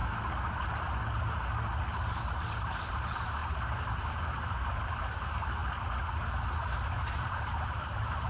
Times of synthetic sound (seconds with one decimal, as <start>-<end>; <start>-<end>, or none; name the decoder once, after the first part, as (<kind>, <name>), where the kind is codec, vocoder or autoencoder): 2.9-5.6 (vocoder, BigVGAN v2); 7.0-8.3